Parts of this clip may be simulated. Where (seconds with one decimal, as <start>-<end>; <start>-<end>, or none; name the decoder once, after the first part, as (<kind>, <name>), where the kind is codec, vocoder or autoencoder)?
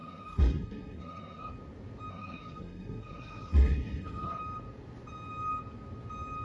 0.0-1.5 (codec, SNAC); 2.1-4.4